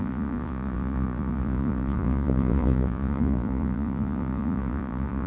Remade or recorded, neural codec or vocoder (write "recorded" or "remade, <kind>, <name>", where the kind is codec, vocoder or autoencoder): remade, vocoder, Vocos